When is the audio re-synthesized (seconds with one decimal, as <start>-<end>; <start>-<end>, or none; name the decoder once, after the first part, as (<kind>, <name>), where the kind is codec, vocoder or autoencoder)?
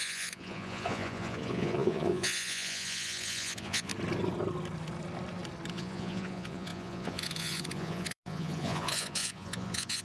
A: 0.0-3.9 (vocoder, Vocos); 5.7-10.0